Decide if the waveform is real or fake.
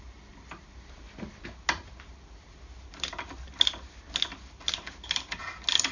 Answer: real